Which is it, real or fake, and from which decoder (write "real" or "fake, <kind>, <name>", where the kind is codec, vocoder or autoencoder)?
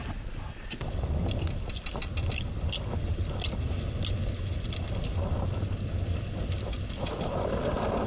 real